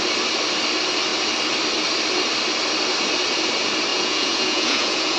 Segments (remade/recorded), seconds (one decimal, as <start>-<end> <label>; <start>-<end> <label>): 0.0-3.9 recorded; 3.9-5.2 remade